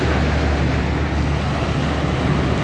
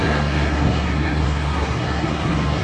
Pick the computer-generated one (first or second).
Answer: second